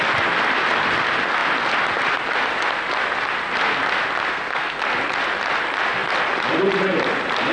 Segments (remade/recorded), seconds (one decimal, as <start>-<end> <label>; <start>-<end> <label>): 0.0-4.3 recorded; 4.3-4.8 remade; 4.8-7.5 recorded